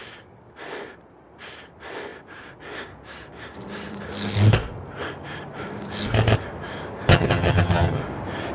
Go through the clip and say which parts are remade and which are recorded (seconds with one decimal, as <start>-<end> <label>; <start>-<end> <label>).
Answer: 0.0-7.1 recorded; 7.1-8.0 remade; 8.0-8.5 recorded